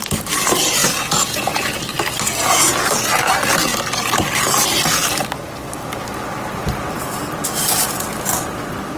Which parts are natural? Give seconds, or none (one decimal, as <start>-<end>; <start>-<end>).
0.0-0.8; 1.8-2.4; 2.9-9.0